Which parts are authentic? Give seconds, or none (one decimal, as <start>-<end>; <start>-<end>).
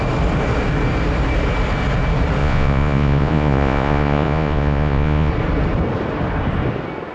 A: 0.0-2.4; 5.3-7.1